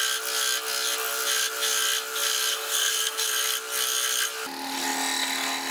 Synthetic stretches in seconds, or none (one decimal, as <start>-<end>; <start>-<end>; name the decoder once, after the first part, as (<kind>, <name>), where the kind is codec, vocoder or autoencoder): 2.5-3.3 (codec, SNAC)